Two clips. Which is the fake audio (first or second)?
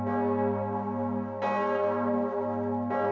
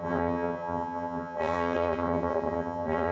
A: second